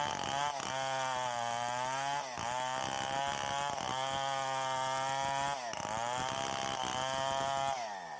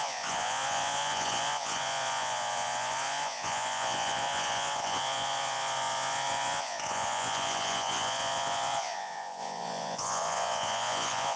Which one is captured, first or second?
first